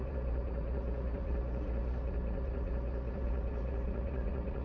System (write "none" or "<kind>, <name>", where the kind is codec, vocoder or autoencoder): vocoder, Vocos